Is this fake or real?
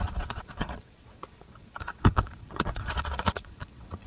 fake